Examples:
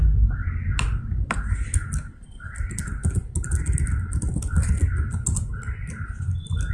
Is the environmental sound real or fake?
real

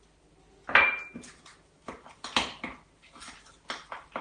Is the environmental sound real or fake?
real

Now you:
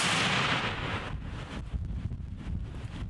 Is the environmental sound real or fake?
real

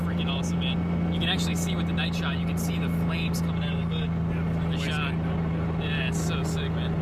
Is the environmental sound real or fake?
real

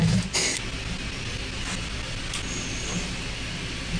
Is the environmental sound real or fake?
real